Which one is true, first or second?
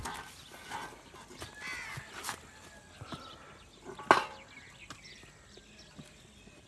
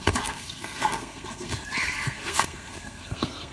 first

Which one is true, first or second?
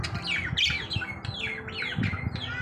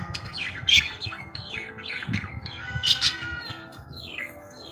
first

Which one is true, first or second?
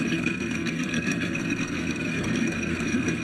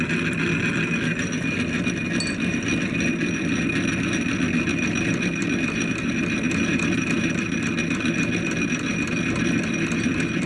second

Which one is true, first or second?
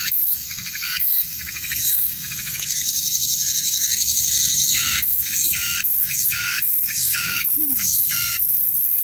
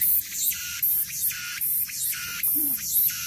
second